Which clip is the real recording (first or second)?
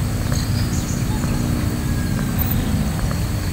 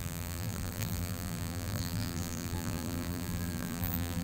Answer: first